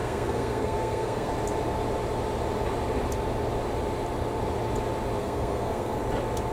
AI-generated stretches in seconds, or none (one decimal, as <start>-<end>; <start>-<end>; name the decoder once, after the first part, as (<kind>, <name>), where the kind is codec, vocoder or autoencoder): 0.0-1.3 (codec, SNAC); 5.2-6.0